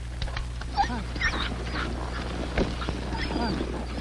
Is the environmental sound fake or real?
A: real